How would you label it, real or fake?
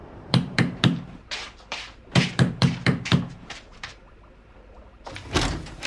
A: fake